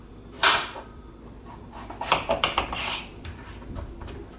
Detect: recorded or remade remade